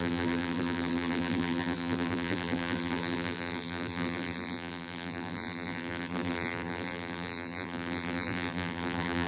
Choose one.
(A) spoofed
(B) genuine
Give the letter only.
A